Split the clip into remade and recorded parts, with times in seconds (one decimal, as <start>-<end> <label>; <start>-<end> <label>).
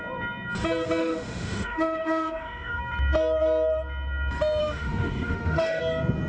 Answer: 0.0-1.0 recorded; 1.0-2.8 remade; 2.8-4.6 recorded; 4.6-5.8 remade; 5.8-6.3 recorded